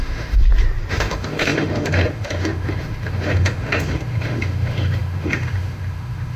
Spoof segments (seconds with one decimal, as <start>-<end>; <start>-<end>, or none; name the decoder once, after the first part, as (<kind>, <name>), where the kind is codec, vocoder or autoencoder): 0.0-0.4 (autoencoder, DAC-VAE); 0.9-6.4